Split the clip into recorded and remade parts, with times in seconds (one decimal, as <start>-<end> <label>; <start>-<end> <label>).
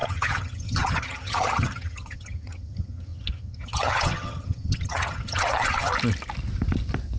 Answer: 0.0-5.9 remade; 5.9-7.2 recorded